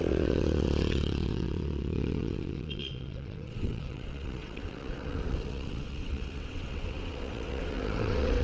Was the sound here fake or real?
fake